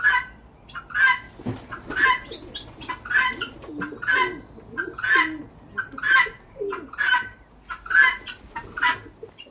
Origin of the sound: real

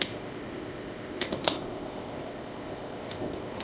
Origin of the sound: fake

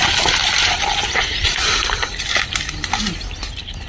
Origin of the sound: real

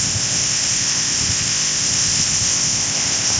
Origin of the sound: fake